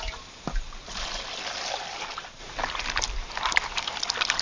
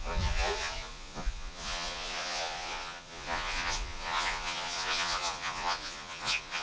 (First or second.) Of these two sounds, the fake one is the second